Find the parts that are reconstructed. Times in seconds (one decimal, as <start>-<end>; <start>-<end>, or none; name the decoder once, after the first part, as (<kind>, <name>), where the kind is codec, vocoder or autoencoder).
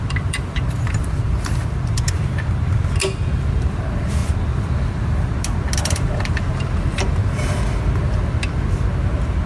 0.0-1.6 (vocoder, BigVGAN v2); 3.5-4.2; 5.8-7.2